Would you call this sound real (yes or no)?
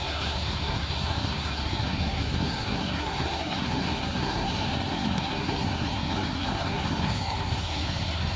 no